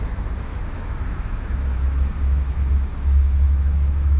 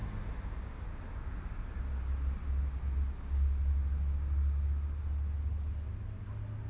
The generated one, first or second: first